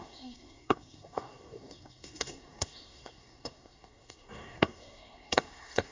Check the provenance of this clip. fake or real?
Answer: fake